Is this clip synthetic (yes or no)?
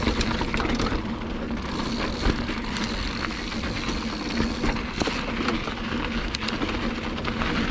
no